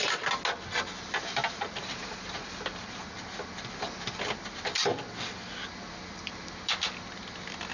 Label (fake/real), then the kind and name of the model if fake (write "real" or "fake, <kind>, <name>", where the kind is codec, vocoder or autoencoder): real